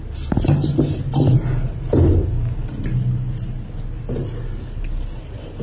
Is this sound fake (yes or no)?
no